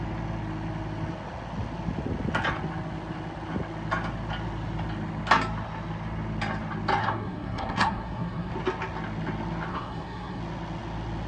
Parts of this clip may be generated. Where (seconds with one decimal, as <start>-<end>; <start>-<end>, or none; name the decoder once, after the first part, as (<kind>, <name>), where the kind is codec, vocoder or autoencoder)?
7.0-8.5 (codec, SNAC); 9.7-10.4